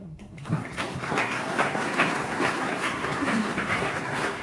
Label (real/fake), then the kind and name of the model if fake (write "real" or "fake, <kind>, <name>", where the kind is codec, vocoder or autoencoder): fake, codec, SNAC